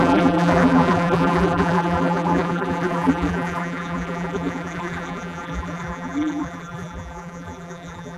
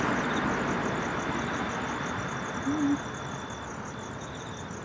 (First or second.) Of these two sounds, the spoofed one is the first